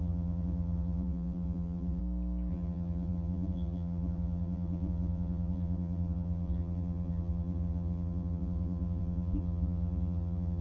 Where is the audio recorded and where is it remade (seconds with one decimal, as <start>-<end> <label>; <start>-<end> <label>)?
0.0-2.0 remade; 2.0-2.5 recorded; 2.5-10.6 remade